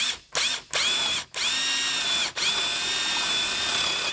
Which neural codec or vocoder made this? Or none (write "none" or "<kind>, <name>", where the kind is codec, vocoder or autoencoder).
none